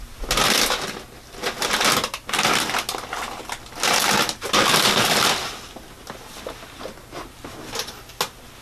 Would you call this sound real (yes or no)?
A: yes